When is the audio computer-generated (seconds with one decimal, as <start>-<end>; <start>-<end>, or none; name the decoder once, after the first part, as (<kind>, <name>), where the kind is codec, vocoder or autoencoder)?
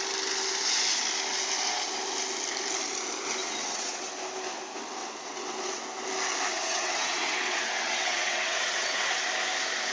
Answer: 3.4-4.1 (vocoder, WaveNeXt); 5.0-5.8; 6.5-9.3